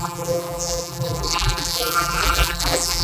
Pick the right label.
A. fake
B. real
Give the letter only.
A